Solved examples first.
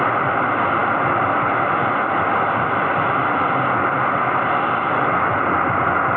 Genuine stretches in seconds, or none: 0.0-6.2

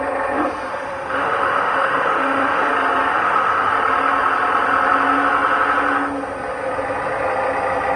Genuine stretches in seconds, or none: 0.0-0.7; 2.7-3.1; 3.7-8.0

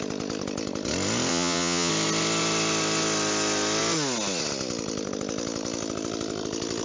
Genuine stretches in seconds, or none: 0.0-1.3; 1.9-6.8

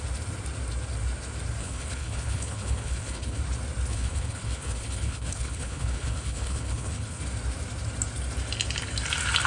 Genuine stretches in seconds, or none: 0.0-1.6; 3.4-3.9; 7.2-9.5

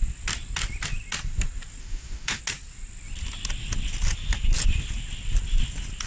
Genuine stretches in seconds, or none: 0.0-1.8; 2.4-6.1

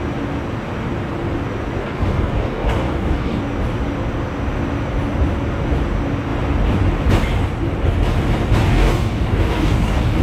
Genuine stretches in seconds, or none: 0.0-1.8; 3.4-8.7

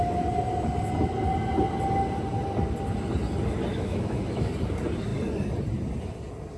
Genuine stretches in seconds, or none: 0.0-3.7; 4.5-6.6